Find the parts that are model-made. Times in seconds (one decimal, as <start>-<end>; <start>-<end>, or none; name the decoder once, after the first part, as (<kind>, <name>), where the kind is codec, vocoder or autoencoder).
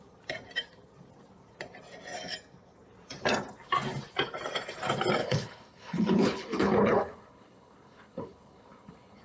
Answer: 5.2-9.2 (codec, HILCodec)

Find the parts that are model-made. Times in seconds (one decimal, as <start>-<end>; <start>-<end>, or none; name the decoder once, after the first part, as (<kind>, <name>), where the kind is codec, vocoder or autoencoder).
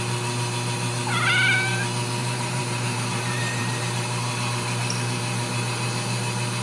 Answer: 2.2-3.8 (vocoder, BigVGAN v2)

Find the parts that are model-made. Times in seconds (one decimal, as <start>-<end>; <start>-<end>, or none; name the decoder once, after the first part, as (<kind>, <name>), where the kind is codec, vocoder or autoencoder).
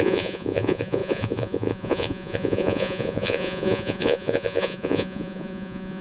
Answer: 0.0-6.0 (vocoder, Vocos)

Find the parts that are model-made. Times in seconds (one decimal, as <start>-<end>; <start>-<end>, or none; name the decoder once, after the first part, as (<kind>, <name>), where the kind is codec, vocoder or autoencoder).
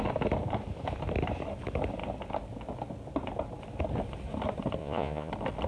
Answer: 4.8-5.3 (vocoder, Vocos)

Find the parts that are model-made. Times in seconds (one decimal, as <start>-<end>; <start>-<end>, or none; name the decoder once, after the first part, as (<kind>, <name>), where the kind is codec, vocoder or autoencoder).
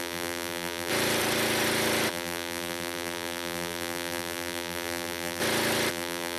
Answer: 0.0-0.9 (vocoder, BigVGAN v2); 2.1-5.4; 5.9-6.4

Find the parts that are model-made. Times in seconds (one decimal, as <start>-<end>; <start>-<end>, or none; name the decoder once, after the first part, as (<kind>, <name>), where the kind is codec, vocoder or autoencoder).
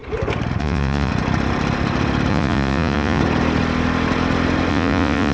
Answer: 0.6-1.1 (vocoder, Vocos); 2.3-3.2; 4.7-5.3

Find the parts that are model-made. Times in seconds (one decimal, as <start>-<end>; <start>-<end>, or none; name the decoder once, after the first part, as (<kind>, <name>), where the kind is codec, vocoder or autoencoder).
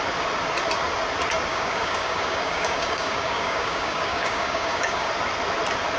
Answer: 1.5-5.1 (codec, DAC)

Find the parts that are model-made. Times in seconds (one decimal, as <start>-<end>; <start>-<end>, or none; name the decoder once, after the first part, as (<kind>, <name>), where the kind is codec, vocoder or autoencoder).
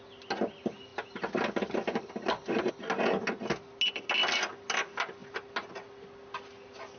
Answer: none